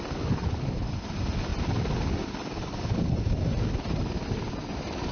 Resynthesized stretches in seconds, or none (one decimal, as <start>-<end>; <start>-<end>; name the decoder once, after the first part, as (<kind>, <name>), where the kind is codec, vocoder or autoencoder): none